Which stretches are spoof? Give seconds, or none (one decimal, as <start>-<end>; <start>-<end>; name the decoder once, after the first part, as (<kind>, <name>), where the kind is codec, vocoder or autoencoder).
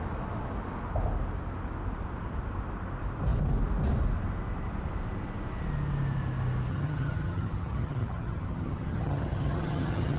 6.7-10.2 (vocoder, HiFi-GAN)